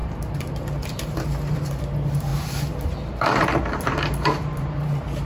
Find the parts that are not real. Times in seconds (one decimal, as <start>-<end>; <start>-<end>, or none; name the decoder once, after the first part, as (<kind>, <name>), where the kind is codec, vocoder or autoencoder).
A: 0.0-1.8 (vocoder, BigVGAN v2); 2.3-5.3